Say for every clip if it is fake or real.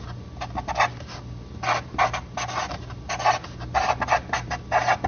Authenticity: real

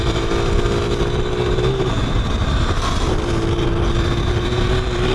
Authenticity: fake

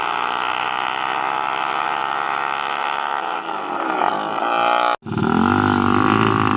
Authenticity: real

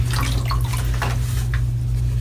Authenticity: real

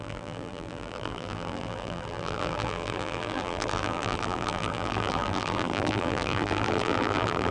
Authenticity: fake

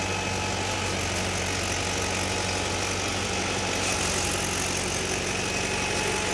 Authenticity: real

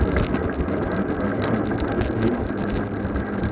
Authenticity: real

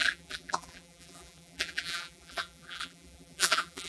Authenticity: fake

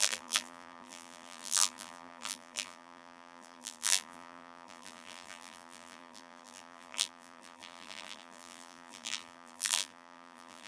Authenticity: fake